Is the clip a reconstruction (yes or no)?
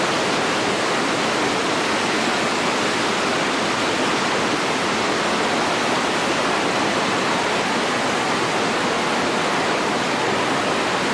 no